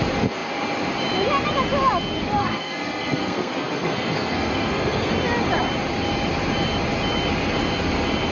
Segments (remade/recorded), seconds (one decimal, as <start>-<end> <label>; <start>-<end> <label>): 0.0-2.4 recorded; 2.4-5.1 remade; 5.1-8.3 recorded